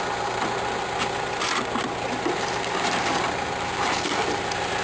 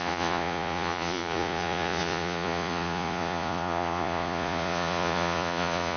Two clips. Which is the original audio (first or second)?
first